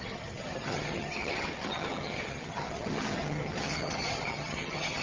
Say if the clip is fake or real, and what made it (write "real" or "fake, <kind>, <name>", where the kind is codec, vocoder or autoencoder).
fake, vocoder, HiFi-GAN